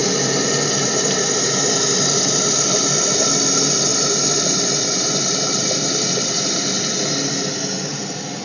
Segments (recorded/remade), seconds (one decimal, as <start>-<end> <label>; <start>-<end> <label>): 0.0-8.4 recorded